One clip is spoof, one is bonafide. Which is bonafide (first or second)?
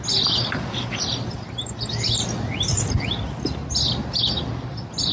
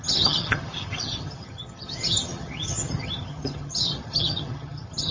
first